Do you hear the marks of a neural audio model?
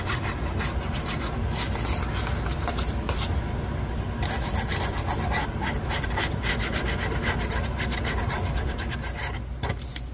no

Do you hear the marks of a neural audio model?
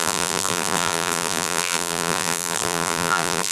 yes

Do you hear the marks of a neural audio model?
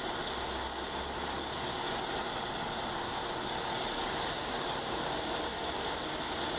no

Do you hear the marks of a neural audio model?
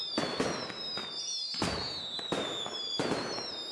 no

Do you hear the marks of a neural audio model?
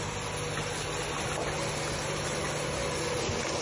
no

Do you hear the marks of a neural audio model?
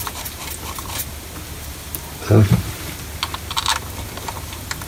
no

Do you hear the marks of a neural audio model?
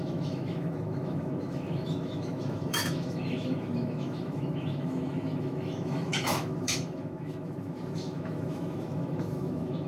yes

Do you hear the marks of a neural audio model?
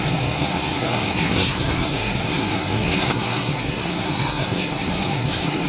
yes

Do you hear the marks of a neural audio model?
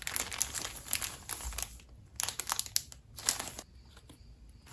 no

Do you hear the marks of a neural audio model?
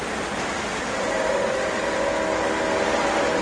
no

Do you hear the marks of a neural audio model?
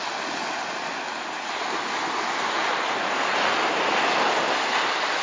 no